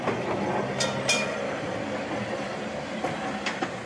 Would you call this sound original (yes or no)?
yes